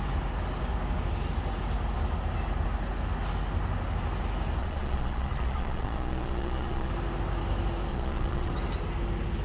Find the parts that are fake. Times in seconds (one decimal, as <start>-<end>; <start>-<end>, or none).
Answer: 4.6-6.9; 7.9-8.5